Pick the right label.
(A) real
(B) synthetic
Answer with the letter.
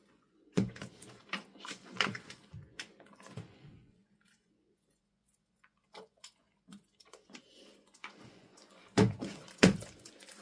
B